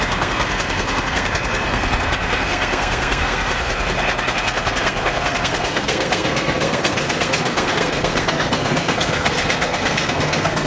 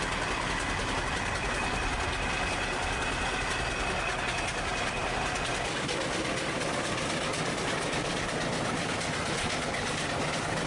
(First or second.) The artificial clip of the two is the first